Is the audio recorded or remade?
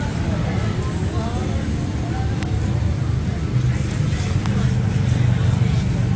recorded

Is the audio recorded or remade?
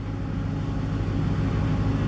recorded